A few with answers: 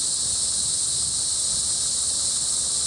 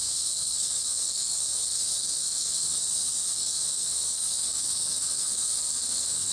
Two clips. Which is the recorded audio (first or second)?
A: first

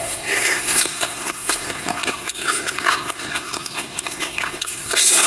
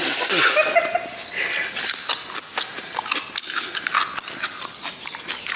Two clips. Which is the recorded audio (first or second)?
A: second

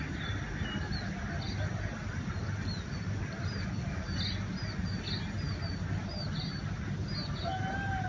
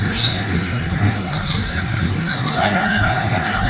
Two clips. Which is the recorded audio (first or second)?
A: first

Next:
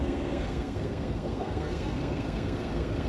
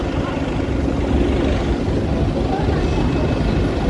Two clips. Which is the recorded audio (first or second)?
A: second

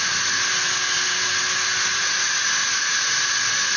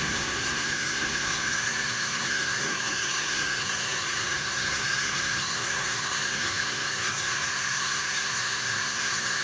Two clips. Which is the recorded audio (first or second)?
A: first